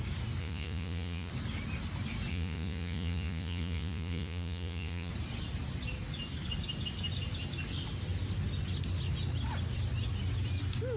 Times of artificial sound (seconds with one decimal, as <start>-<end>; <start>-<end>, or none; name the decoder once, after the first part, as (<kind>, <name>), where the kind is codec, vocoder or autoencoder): 0.4-1.3 (vocoder, Vocos); 2.3-5.1